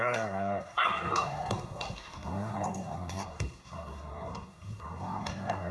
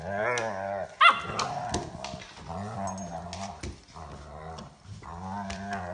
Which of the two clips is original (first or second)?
second